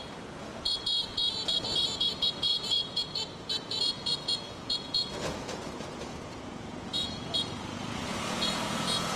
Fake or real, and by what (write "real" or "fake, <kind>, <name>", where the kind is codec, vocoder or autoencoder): fake, vocoder, Vocos